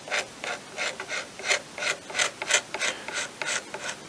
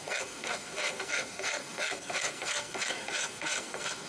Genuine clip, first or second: first